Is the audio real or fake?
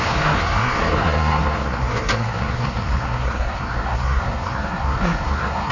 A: fake